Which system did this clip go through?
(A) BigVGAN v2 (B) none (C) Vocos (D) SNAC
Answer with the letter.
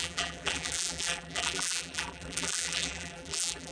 A